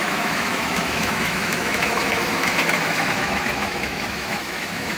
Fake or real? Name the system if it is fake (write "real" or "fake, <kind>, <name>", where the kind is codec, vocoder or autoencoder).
fake, autoencoder, DAC-VAE